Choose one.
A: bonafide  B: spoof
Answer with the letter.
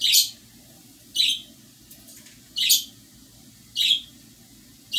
A